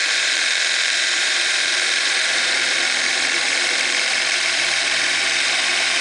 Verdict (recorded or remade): remade